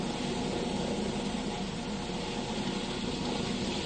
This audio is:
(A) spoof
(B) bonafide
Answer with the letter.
B